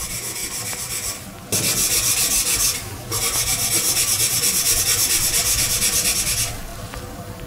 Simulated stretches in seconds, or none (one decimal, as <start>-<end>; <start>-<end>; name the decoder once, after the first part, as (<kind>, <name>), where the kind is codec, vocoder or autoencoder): none